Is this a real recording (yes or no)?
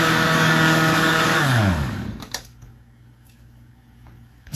no